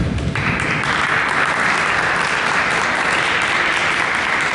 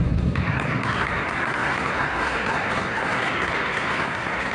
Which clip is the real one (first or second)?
first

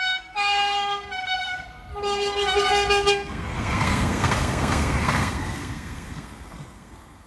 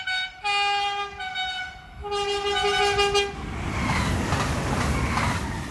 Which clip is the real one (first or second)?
second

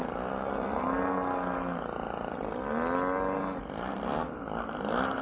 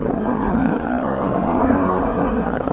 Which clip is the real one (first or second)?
first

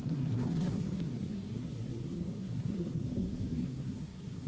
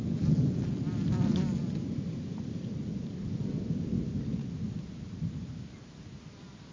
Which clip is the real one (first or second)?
second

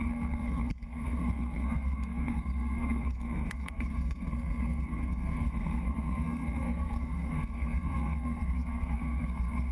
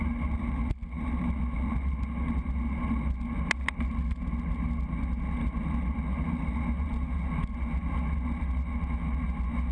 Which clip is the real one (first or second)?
second